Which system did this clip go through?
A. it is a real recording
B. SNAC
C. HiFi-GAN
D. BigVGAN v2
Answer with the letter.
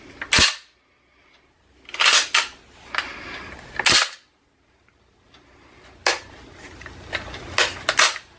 A